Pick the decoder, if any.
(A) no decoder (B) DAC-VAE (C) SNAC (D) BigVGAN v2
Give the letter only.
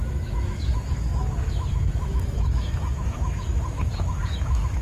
B